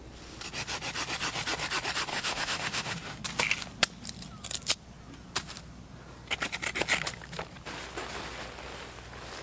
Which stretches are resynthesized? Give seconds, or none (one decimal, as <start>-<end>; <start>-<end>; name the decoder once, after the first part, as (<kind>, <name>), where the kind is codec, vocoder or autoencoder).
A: 2.1-3.2 (autoencoder, DAC-VAE)